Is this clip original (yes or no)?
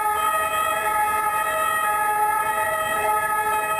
yes